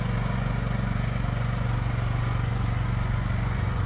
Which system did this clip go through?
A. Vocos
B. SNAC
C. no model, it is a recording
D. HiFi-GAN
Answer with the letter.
A